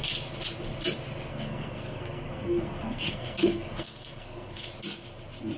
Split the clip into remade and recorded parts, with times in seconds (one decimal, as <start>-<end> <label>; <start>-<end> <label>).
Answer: 0.0-1.3 recorded; 1.3-4.7 remade; 4.7-5.6 recorded